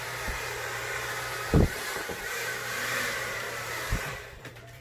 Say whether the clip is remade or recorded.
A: remade